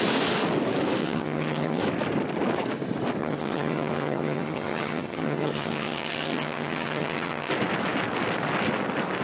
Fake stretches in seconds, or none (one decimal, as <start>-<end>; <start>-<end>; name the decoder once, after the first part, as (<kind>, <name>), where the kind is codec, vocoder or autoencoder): 1.0-1.8 (vocoder, HiFi-GAN); 3.2-7.5